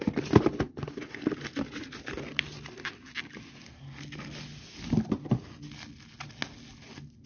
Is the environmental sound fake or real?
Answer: real